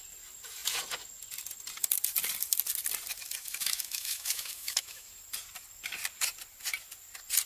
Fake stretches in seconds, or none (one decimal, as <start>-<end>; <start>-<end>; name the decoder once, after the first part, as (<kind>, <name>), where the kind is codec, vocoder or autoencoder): 3.4-5.1 (autoencoder, DAC-VAE)

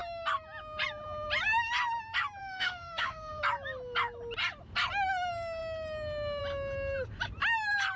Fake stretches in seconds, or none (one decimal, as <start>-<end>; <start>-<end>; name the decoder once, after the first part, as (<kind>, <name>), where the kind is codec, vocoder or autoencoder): 2.4-3.4 (autoencoder, DAC-VAE)

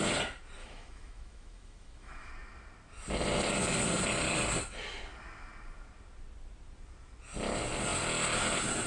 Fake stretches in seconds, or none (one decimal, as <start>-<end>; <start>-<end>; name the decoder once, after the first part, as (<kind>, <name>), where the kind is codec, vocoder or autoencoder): 0.6-2.3 (autoencoder, DAC-VAE)

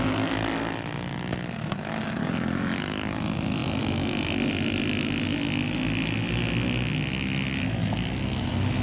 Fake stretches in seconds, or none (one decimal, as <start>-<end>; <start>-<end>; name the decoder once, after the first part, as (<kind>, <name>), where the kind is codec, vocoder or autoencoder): none

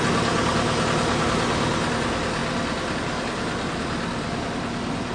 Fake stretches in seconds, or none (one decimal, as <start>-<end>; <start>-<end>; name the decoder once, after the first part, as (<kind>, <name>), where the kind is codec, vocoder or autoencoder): none

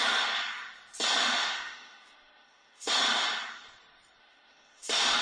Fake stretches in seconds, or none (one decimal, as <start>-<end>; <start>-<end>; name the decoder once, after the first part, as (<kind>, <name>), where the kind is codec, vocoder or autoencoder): 1.2-2.9 (autoencoder, DAC-VAE); 4.2-5.2

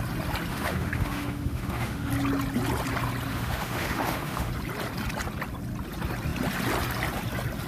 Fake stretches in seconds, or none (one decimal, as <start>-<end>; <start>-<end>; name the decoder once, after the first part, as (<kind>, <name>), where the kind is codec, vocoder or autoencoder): 0.5-2.1 (autoencoder, DAC-VAE); 3.3-4.5